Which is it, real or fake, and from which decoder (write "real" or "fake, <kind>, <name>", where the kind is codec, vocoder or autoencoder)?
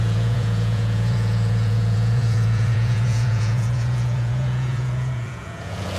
fake, vocoder, Vocos